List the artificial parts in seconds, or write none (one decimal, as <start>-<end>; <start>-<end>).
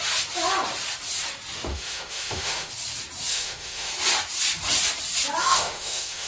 1.7-2.7; 3.3-3.9; 5.4-6.3